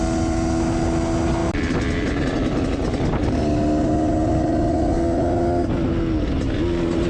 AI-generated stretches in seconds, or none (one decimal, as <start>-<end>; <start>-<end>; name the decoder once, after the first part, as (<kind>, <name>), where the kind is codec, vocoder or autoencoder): none